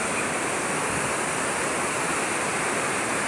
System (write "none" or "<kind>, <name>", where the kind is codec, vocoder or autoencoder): none